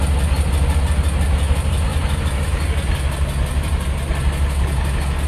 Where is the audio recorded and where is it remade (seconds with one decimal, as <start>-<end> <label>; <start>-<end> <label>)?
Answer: 0.0-5.3 recorded